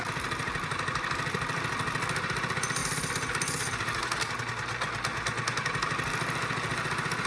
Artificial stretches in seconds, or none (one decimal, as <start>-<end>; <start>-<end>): none